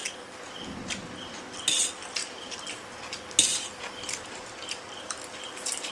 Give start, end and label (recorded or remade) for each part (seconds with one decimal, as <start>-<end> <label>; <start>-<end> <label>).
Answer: 0.0-2.2 recorded; 2.2-2.7 remade; 2.7-3.5 recorded; 3.5-5.2 remade; 5.2-5.9 recorded